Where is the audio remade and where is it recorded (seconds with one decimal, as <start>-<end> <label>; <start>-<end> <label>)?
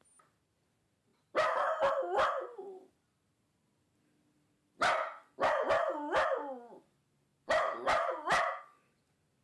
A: 0.0-9.4 recorded